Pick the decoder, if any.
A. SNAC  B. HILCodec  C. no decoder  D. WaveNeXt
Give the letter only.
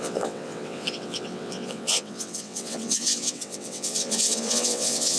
D